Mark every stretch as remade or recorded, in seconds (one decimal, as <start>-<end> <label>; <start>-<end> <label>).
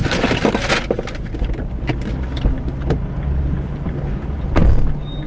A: 0.0-5.3 recorded